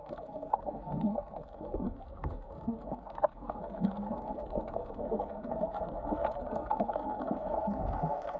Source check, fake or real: fake